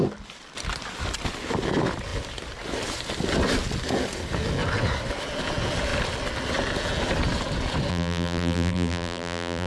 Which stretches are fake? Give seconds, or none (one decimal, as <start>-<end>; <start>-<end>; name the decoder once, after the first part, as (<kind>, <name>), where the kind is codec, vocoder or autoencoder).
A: 7.9-9.7 (vocoder, BigVGAN v2)